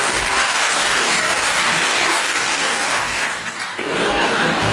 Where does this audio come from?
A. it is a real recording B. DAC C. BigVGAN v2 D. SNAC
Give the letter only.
B